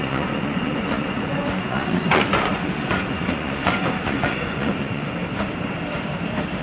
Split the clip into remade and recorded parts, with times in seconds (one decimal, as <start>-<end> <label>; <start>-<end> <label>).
0.0-5.2 remade; 5.2-6.6 recorded